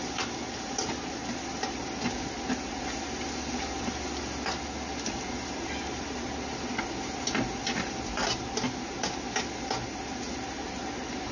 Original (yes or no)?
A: yes